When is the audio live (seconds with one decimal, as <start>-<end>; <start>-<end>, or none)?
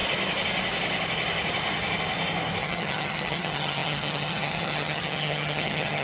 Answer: 0.0-2.6